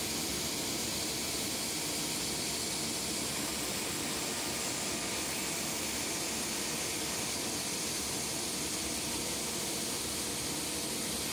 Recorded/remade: recorded